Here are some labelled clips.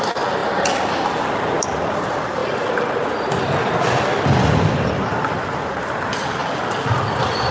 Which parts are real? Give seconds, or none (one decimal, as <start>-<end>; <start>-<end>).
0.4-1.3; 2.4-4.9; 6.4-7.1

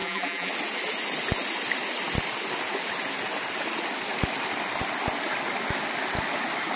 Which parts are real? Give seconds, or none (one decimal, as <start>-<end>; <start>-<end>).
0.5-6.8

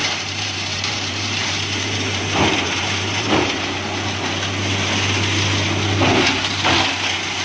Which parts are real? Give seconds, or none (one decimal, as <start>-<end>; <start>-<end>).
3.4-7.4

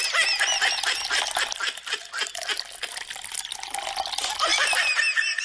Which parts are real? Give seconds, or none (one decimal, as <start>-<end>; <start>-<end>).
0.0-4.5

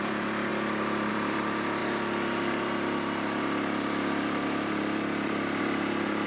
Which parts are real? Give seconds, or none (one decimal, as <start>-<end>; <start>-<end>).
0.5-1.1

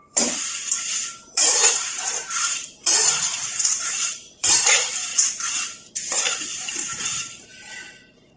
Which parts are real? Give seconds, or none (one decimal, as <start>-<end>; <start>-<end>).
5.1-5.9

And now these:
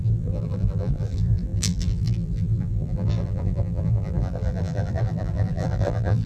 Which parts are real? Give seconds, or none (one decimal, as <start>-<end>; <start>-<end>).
none

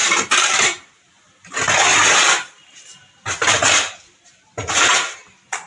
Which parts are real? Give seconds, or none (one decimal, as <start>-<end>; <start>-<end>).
1.1-1.9; 5.3-5.7